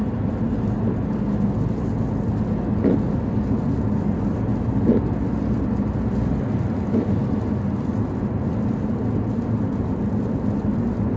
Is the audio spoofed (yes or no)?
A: no